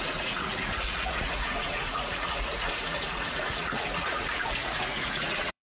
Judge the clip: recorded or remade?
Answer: remade